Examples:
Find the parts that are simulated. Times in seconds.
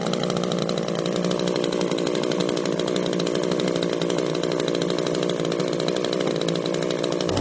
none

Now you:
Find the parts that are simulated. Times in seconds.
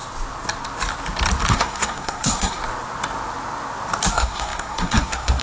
1.5-2.6 (codec, SNAC); 4.1-5.4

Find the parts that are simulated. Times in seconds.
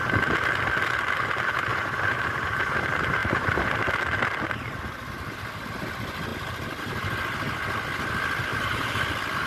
1.7-2.7 (vocoder, BigVGAN v2); 3.2-3.8; 8.5-9.0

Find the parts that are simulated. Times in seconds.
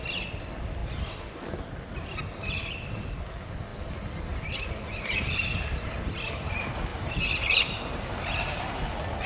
6.9-8.8 (vocoder, BigVGAN v2)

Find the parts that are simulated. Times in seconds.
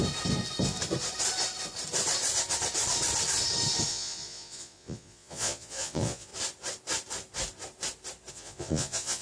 3.9-6.3 (vocoder, Vocos); 8.3-9.2